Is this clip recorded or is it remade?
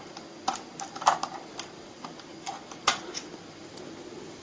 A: recorded